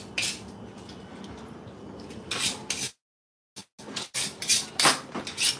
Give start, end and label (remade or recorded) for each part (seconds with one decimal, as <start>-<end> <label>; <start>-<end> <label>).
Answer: 0.0-5.6 recorded